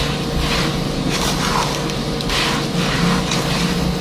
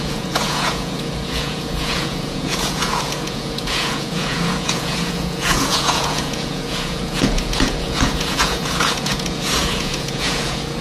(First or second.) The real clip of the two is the first